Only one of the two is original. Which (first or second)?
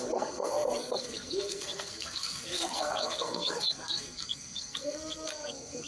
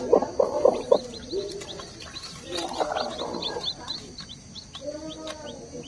second